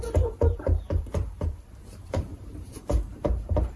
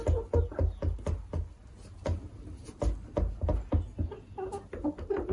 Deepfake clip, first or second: first